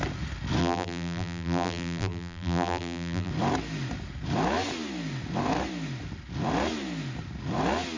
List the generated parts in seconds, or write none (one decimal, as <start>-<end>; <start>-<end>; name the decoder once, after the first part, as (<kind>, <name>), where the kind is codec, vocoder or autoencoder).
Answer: 0.6-3.3 (vocoder, BigVGAN v2)